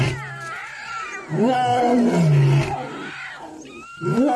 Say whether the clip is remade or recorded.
recorded